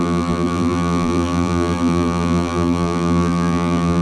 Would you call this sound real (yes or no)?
no